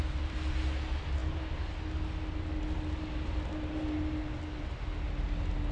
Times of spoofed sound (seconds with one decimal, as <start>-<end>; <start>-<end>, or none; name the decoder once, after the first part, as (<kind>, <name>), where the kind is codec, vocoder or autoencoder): none